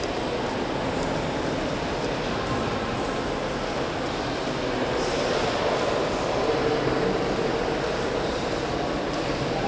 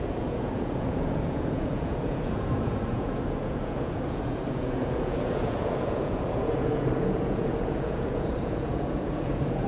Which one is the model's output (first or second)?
second